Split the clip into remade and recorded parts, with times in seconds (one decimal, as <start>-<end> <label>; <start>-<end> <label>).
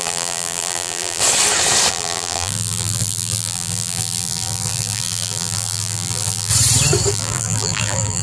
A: 0.0-1.2 remade; 1.2-1.9 recorded; 1.9-6.5 remade; 6.5-7.1 recorded; 7.1-8.2 remade